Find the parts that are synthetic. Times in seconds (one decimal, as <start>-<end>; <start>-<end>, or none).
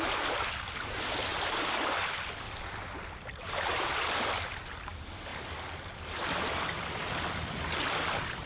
0.0-5.3; 6.1-8.5